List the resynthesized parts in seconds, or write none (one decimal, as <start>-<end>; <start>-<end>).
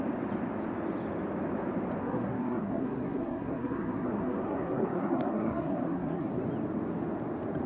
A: 2.0-6.4